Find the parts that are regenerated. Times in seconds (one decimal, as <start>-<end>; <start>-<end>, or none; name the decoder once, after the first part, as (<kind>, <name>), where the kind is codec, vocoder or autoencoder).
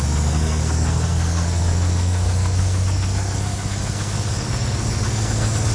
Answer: 0.0-5.7 (codec, SNAC)